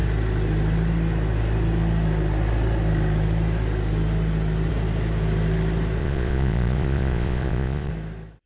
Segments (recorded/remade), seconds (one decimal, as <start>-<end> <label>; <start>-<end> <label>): 0.0-6.0 recorded; 6.0-7.9 remade; 7.9-8.5 recorded